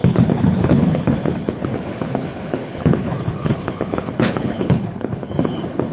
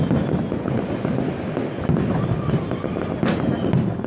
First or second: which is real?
second